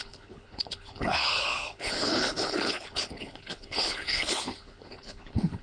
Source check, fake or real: fake